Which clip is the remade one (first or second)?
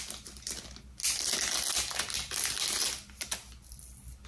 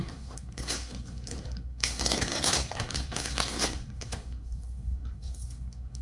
second